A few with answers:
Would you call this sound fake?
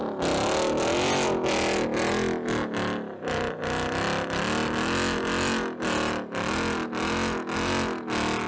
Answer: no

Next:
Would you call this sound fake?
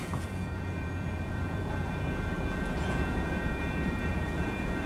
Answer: yes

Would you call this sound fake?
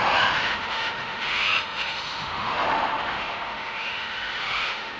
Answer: yes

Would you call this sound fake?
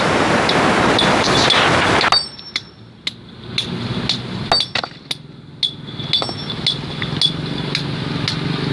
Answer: no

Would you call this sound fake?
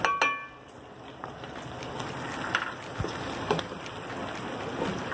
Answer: no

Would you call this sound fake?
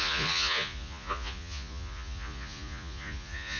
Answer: yes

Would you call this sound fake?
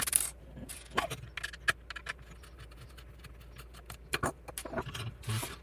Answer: no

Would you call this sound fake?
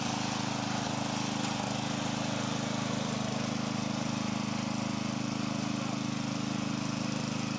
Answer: no